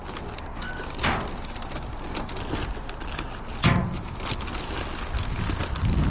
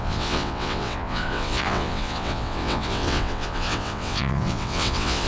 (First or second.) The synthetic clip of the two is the second